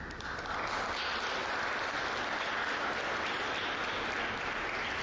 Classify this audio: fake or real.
real